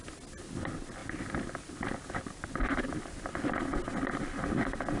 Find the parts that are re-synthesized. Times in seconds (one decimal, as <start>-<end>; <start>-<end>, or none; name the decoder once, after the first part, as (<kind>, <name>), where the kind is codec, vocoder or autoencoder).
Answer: none

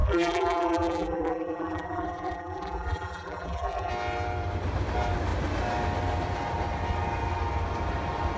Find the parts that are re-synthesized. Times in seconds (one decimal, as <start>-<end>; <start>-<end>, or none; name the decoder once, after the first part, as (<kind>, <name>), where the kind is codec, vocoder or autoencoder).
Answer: 0.0-3.9 (vocoder, BigVGAN v2)

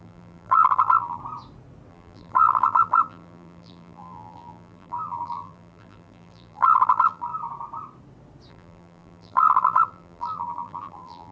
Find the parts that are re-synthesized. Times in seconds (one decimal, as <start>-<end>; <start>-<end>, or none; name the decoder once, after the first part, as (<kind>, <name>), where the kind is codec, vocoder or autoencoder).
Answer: 0.0-1.2 (vocoder, BigVGAN v2); 1.9-7.3; 8.5-11.3

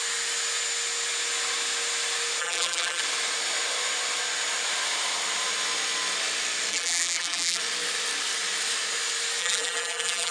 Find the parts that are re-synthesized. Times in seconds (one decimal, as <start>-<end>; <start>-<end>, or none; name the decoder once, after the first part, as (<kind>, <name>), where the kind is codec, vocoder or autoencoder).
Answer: 2.4-3.0 (vocoder, BigVGAN v2); 6.7-7.6; 9.4-10.3

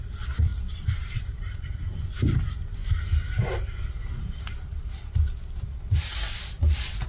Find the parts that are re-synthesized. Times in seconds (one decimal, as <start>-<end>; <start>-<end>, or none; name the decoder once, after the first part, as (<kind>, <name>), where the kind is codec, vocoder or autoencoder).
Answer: 0.0-2.8 (vocoder, BigVGAN v2)